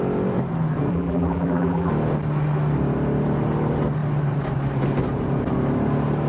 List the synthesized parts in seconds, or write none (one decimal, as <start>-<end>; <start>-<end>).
0.9-1.9